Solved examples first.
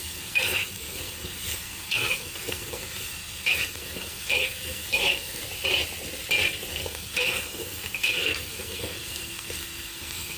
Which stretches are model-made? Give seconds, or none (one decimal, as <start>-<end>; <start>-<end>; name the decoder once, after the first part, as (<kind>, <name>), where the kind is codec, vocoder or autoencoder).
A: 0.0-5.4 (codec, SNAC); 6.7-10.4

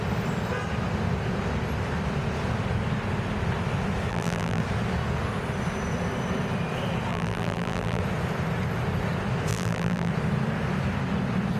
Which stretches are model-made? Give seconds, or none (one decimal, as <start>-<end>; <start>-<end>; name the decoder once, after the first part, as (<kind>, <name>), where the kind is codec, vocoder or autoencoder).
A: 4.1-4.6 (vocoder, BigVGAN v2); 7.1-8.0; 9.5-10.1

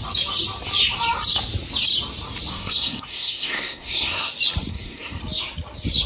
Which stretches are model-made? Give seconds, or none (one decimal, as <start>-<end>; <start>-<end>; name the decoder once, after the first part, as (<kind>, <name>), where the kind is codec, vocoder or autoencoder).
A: 2.5-4.3 (codec, SNAC); 4.7-5.2

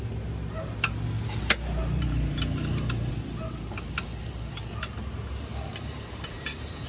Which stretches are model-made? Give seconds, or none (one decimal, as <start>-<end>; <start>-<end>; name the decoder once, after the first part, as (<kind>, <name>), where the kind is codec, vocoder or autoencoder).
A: 1.8-3.1 (vocoder, BigVGAN v2); 5.7-6.9

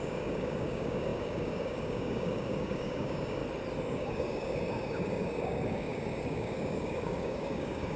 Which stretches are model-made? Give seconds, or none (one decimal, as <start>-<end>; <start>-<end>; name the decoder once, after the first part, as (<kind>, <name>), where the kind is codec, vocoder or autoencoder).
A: 0.0-3.4 (codec, DAC); 3.9-8.0

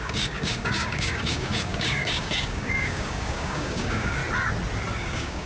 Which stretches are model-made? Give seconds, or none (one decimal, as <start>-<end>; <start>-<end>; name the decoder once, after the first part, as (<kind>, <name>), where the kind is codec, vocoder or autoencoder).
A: 0.0-4.2 (codec, DAC); 5.0-5.5